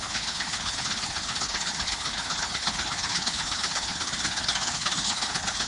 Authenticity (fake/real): fake